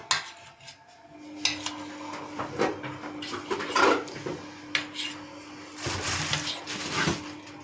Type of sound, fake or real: real